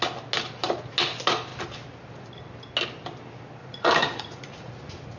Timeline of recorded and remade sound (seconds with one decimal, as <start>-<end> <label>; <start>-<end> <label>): 0.0-3.6 recorded; 3.6-4.7 remade; 4.7-5.2 recorded